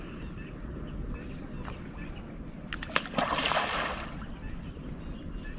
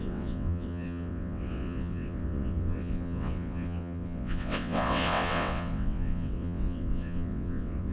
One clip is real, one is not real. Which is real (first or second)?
first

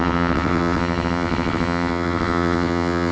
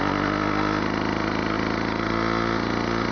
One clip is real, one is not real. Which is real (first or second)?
second